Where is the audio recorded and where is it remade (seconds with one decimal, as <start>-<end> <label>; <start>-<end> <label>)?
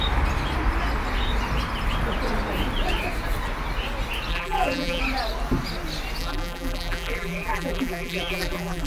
0.0-4.3 recorded; 4.3-5.0 remade; 5.0-6.2 recorded; 6.2-8.9 remade